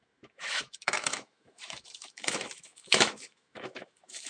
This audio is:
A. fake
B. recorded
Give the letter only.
A